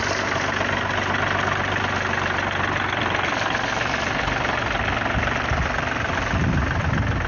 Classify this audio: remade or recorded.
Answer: recorded